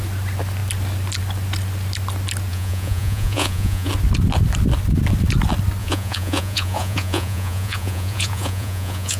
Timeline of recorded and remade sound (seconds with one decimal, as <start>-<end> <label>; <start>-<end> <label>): 0.0-2.5 recorded; 2.5-3.9 remade; 3.9-5.8 recorded; 5.8-9.2 remade